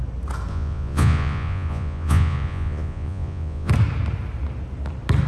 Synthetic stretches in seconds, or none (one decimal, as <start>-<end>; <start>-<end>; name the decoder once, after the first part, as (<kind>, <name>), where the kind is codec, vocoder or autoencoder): 0.5-3.7 (vocoder, Vocos)